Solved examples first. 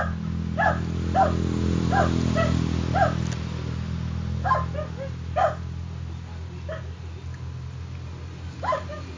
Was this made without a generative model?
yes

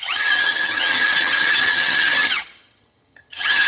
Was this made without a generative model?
no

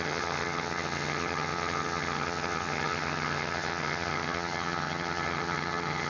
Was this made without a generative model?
no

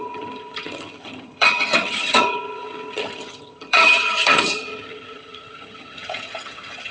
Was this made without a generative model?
no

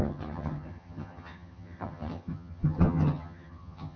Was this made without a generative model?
no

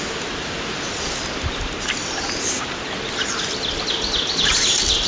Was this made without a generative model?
yes